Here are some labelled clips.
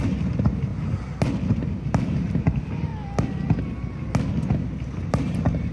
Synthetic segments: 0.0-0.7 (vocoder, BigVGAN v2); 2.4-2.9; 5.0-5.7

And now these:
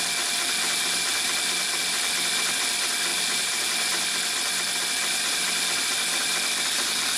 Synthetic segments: 3.1-3.7 (vocoder, BigVGAN v2)

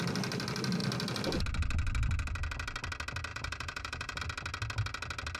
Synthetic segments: 3.3-4.2 (vocoder, BigVGAN v2)

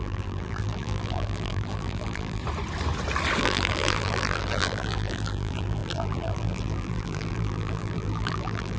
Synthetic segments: 0.0-2.4 (vocoder, BigVGAN v2); 3.4-8.8

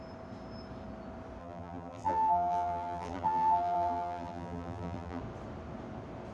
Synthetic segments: 1.4-5.2 (vocoder, BigVGAN v2)

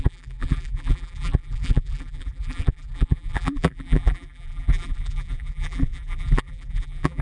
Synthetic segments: 0.0-7.2 (vocoder, BigVGAN v2)